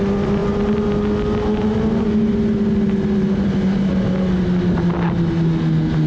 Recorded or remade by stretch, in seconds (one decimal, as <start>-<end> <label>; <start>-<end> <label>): 0.0-6.1 recorded